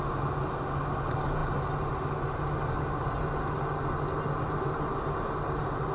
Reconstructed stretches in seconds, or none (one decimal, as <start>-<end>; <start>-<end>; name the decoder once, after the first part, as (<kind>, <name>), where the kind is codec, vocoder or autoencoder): none